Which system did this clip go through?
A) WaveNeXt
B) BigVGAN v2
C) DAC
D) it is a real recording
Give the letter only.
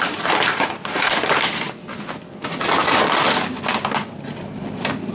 D